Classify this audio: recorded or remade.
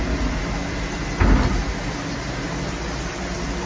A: recorded